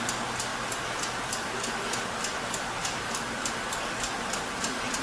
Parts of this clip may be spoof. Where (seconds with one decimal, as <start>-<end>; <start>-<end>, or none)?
0.0-5.0